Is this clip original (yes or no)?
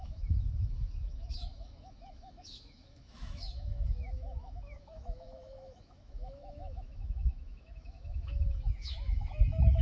no